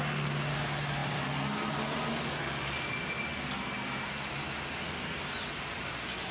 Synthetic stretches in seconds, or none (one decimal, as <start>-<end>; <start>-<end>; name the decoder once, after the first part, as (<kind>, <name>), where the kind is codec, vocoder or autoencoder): none